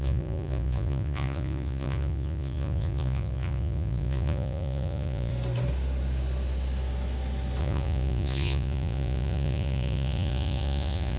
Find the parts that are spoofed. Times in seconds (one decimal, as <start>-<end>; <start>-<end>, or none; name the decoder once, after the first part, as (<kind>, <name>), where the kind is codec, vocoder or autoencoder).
0.0-5.3 (vocoder, Vocos); 7.6-11.2